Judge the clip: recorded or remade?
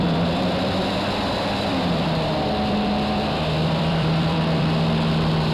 remade